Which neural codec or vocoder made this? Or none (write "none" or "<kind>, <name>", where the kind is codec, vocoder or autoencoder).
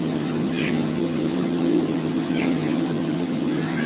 vocoder, HiFi-GAN